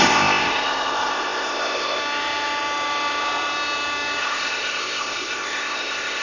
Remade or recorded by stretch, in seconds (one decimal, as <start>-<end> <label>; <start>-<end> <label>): 0.0-2.0 remade; 2.0-4.2 recorded; 4.2-6.2 remade